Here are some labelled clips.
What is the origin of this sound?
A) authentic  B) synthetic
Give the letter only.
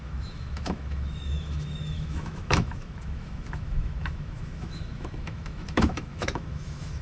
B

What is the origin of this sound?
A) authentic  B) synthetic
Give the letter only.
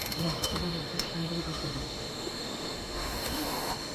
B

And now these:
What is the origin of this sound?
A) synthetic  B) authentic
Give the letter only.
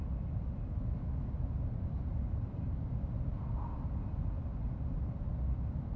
B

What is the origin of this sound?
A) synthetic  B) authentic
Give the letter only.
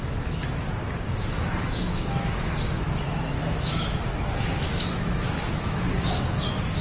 A